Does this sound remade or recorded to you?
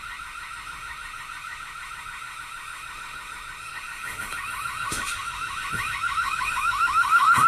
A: remade